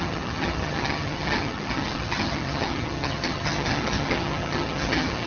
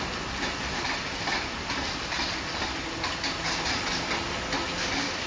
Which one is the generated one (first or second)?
first